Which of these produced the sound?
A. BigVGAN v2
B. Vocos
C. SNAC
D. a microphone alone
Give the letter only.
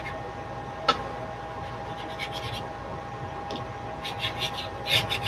D